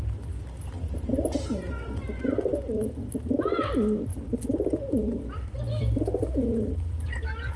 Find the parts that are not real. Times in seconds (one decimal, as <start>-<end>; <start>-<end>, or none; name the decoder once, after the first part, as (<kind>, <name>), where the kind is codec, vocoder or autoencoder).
4.1-7.6 (vocoder, BigVGAN v2)